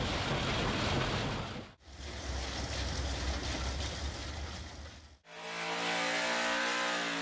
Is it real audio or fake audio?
real